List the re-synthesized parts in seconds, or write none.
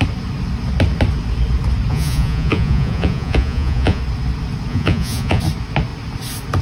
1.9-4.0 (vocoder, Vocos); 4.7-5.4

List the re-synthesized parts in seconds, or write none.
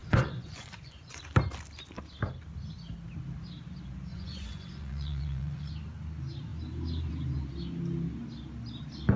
0.0-1.2 (vocoder, Vocos); 4.1-5.7